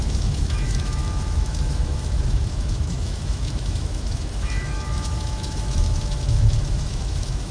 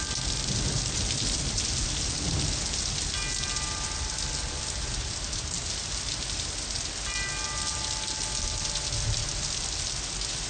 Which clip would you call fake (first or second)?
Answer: first